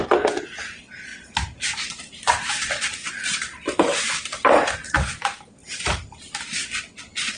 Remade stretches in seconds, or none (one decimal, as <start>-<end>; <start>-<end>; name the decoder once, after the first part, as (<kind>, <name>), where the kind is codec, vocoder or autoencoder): 5.6-6.2 (vocoder, BigVGAN v2)